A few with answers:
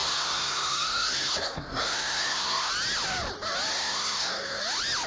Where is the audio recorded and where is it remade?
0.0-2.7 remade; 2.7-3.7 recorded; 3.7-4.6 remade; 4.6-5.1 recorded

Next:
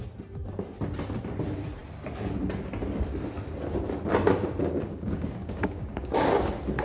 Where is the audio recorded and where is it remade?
0.0-4.6 recorded; 4.6-6.3 remade; 6.3-6.8 recorded